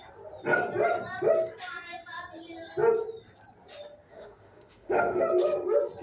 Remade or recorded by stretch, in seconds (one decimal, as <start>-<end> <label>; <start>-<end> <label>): 0.0-4.1 recorded; 4.1-5.2 remade; 5.2-6.0 recorded